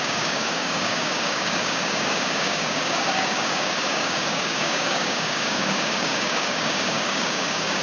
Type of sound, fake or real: fake